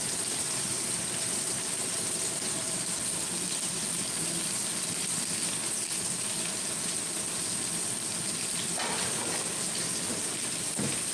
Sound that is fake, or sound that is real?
real